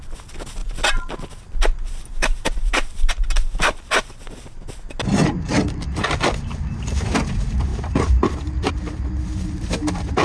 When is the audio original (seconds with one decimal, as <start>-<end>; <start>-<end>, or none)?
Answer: 0.0-10.2